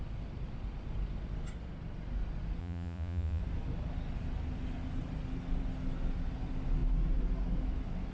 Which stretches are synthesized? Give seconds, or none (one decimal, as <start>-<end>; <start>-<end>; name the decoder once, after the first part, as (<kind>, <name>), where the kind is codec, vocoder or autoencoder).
2.6-3.4 (vocoder, Vocos)